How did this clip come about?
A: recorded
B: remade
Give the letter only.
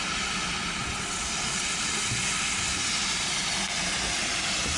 A